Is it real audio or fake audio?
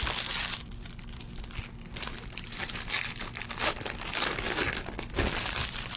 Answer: real